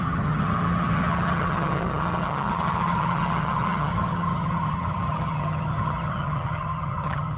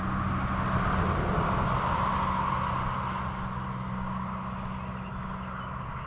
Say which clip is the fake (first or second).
first